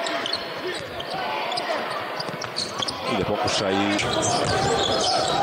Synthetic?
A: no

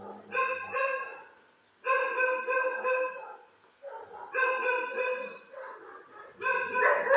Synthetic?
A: no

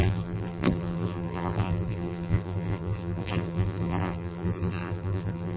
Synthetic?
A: yes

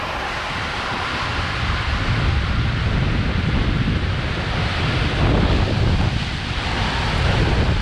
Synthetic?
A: no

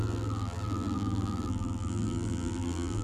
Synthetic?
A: yes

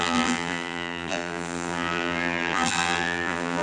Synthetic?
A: yes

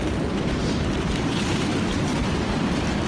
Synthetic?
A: yes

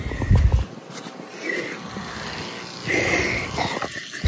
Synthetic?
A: no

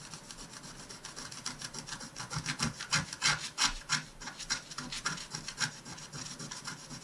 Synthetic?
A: no